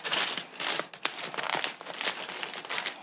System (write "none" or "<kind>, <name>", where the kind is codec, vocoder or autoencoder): none